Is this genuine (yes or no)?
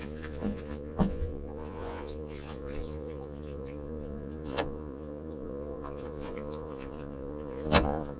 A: no